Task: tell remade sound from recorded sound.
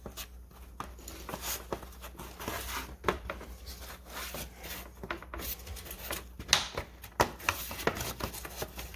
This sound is recorded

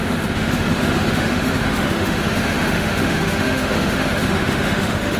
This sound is remade